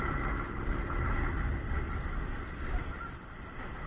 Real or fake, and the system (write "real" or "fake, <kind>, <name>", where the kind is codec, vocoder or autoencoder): real